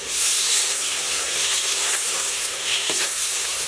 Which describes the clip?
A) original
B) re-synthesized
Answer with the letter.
B